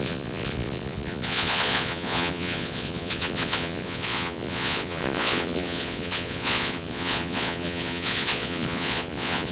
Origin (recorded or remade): remade